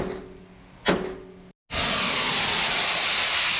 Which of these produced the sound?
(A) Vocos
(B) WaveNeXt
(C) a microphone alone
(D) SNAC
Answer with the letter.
C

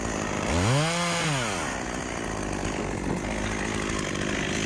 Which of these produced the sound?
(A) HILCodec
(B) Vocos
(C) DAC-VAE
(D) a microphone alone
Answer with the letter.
D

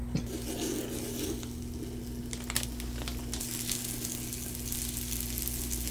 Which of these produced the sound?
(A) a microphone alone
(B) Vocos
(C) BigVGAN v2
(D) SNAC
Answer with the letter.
A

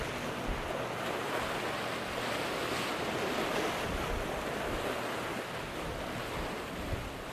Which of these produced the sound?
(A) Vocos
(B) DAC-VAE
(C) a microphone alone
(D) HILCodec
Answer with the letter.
C